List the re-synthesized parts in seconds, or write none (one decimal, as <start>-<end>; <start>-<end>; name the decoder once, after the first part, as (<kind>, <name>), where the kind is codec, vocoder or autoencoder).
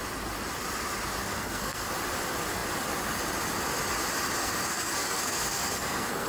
1.2-1.9 (codec, SNAC); 4.4-6.3